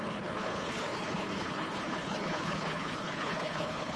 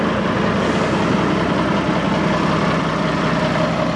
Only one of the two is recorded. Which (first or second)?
second